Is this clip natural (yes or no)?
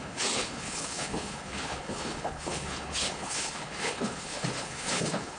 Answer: no